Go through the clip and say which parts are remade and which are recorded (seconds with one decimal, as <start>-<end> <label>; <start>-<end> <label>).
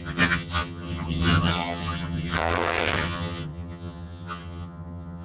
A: 0.0-5.2 remade